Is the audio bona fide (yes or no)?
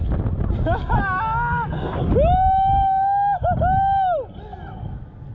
yes